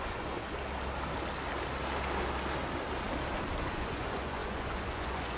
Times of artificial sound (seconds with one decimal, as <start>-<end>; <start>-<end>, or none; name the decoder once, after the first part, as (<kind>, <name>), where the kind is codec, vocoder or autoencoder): 0.0-0.4 (vocoder, Vocos); 3.6-5.4